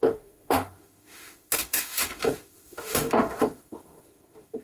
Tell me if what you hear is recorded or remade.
remade